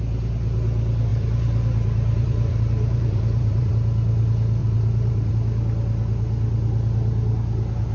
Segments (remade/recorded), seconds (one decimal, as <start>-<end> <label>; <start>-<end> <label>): 0.0-1.1 recorded; 1.1-3.7 remade; 3.7-4.6 recorded; 4.6-5.3 remade; 5.3-7.9 recorded